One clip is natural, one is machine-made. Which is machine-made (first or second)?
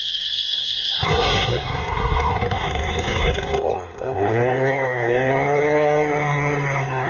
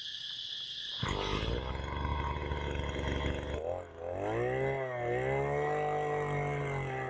first